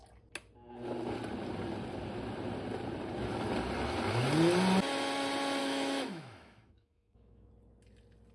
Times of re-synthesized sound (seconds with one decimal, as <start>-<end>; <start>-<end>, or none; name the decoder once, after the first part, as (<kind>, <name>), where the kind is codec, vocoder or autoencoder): 5.6-7.5 (autoencoder, DAC-VAE)